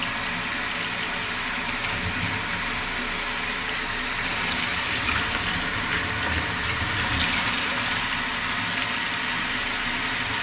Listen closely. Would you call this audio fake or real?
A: real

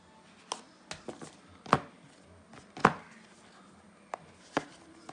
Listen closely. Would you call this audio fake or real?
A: real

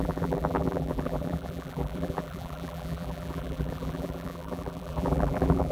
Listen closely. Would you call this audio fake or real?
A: fake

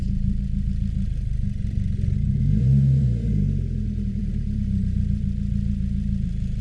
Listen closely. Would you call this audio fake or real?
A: fake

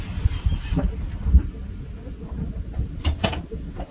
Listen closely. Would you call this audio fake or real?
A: real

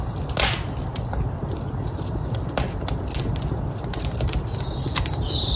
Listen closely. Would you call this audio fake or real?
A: real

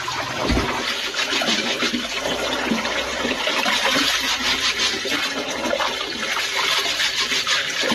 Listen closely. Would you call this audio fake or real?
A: fake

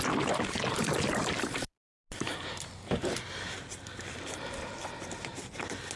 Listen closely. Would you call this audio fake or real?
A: real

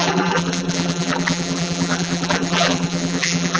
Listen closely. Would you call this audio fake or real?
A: fake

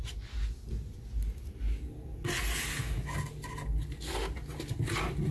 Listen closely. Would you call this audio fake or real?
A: real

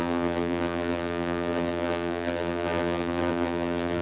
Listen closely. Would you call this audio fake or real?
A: fake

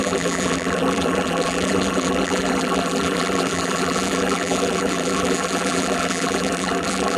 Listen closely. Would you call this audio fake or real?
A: fake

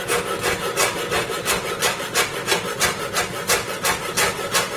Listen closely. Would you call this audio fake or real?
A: real